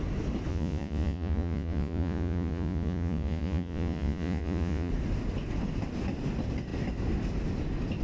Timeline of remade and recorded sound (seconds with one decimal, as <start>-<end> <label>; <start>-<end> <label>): 0.0-0.5 recorded; 0.5-4.9 remade; 4.9-8.0 recorded